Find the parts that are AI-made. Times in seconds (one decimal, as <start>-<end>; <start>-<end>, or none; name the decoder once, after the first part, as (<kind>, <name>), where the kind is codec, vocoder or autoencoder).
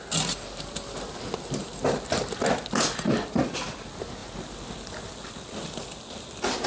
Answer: none